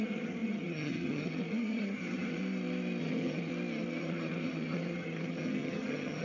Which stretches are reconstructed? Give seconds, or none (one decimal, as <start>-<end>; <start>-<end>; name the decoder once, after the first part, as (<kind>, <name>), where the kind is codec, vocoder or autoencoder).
0.0-2.4 (vocoder, HiFi-GAN); 3.0-3.5; 4.0-6.2